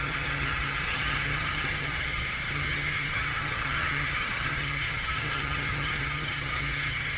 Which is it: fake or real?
fake